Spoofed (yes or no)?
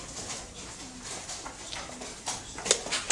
no